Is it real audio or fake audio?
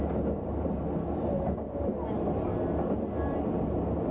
real